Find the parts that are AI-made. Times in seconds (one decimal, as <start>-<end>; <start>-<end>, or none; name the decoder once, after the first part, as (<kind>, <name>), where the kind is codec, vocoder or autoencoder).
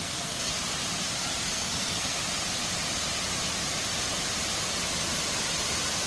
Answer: 0.0-0.5 (codec, SNAC); 1.4-2.2